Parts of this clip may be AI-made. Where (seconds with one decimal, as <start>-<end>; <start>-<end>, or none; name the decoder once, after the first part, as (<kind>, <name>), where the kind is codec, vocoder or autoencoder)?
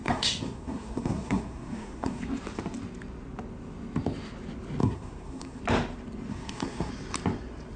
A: 0.0-2.2 (codec, SNAC); 4.8-5.6; 6.3-6.9